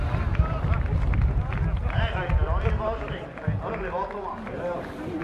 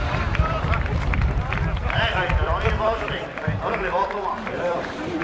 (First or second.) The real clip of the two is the first